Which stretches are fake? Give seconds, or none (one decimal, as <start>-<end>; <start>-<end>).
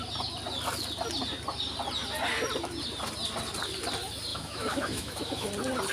4.3-5.5